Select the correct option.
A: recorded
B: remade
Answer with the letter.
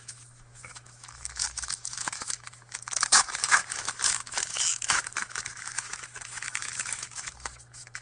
B